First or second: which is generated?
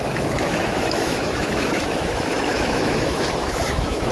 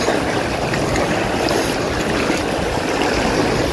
first